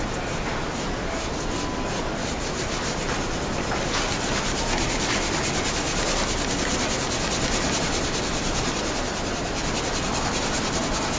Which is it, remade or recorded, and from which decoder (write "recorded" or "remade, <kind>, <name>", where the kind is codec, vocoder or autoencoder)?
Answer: recorded